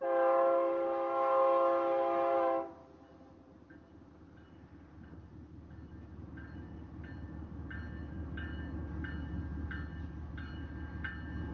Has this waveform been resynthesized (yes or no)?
no